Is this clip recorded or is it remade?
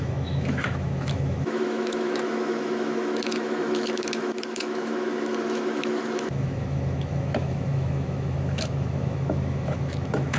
remade